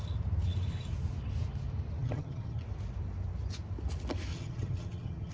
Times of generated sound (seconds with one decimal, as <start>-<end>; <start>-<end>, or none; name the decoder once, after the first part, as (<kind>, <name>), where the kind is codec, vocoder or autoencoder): 2.0-2.6 (vocoder, HiFi-GAN); 4.3-5.3